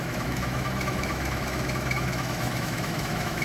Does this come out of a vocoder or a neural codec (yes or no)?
yes